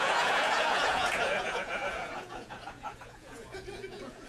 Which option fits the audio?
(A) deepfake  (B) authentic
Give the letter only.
A